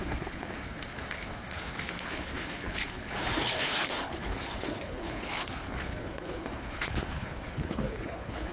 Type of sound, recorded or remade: remade